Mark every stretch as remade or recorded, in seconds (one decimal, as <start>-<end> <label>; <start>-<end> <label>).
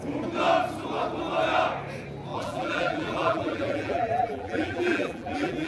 0.0-2.3 recorded; 2.3-5.7 remade